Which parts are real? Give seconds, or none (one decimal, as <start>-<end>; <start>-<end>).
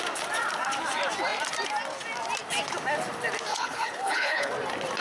0.0-3.5; 4.5-5.0